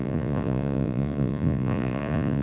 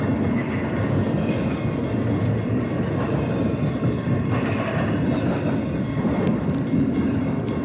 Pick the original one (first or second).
second